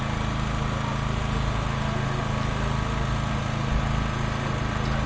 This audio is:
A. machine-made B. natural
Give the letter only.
B